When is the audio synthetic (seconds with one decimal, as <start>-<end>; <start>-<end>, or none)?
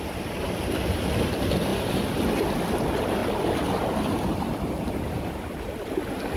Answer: 3.2-5.2